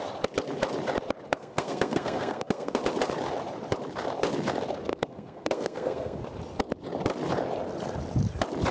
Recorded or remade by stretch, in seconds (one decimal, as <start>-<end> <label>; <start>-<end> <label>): 0.0-1.3 recorded; 1.3-2.8 remade; 2.8-4.9 recorded; 4.9-6.2 remade; 6.2-8.7 recorded